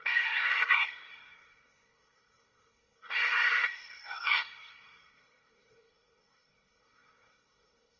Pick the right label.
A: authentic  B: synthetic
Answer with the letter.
B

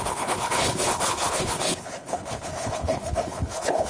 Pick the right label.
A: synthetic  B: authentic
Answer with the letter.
A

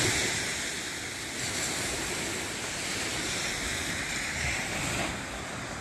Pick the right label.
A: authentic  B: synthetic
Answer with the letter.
A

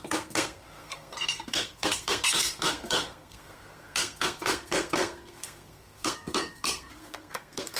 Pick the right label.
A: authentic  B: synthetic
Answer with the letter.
B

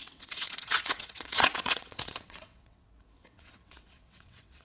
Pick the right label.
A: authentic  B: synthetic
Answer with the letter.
B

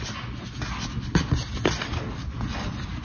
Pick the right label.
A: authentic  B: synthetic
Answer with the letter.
A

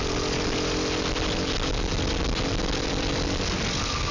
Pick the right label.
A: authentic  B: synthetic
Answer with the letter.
A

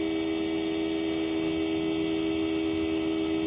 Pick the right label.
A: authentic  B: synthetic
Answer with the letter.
A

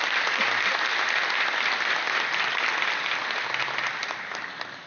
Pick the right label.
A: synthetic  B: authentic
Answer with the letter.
B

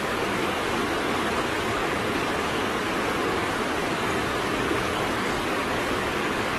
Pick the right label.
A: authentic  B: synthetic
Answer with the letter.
B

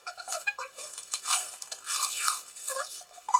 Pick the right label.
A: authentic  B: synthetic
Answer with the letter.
B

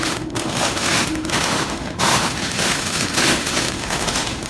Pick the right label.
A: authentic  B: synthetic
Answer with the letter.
B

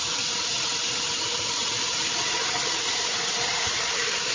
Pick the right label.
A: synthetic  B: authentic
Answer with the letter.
B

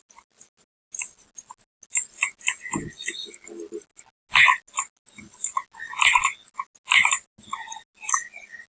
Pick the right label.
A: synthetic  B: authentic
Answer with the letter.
B